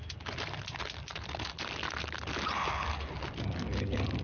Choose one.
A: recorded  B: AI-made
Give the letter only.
A